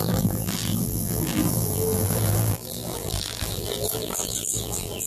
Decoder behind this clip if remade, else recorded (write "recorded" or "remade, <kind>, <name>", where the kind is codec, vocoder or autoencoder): remade, vocoder, BigVGAN v2